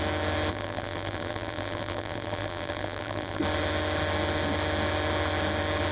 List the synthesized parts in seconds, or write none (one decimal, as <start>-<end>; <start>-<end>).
0.5-3.4